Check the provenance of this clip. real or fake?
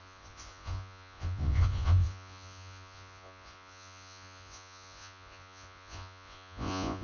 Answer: fake